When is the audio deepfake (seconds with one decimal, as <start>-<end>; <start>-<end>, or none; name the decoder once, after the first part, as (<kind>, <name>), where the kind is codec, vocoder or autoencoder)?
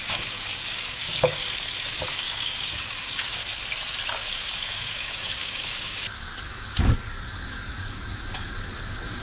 0.0-3.4 (codec, DAC); 4.1-9.2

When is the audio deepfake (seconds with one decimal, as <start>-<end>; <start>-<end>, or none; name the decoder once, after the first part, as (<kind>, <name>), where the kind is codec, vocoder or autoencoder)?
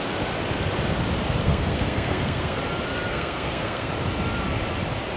1.4-2.6 (codec, SNAC); 3.1-3.9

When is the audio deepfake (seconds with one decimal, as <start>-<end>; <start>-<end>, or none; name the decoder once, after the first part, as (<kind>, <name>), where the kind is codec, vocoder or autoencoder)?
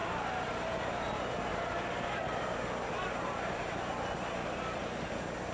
0.0-1.0 (vocoder, BigVGAN v2); 1.5-2.4; 4.4-5.1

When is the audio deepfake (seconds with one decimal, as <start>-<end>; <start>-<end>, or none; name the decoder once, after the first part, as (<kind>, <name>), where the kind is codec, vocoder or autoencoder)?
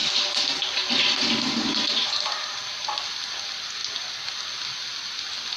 0.0-3.0 (vocoder, BigVGAN v2)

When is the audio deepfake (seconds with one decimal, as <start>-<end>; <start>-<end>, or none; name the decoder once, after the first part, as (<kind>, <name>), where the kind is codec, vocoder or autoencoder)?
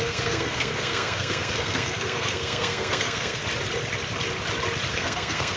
0.0-3.4 (codec, SNAC); 4.9-5.6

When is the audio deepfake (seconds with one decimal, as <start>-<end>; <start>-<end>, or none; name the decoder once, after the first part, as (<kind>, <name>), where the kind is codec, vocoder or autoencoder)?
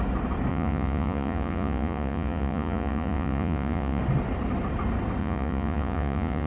0.5-4.0 (vocoder, Vocos); 5.2-6.5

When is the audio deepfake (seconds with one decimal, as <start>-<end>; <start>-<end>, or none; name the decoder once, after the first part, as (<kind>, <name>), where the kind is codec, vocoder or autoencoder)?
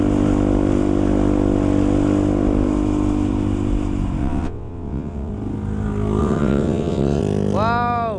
4.2-5.3 (vocoder, WaveNeXt); 6.2-7.2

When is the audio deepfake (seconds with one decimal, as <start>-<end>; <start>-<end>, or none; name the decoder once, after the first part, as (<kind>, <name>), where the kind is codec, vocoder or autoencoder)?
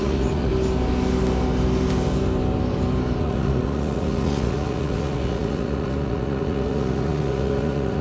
0.0-0.5 (vocoder, Vocos); 3.2-8.0